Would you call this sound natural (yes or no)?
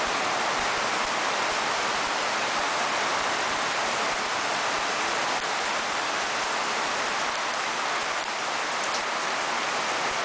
yes